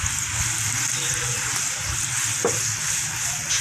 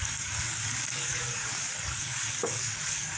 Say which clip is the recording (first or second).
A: first